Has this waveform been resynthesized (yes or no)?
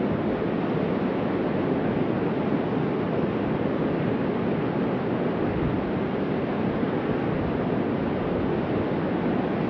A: no